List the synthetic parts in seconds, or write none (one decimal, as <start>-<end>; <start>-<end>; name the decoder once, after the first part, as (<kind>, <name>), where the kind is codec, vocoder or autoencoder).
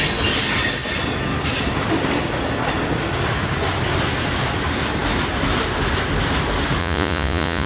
6.8-7.7 (vocoder, Vocos)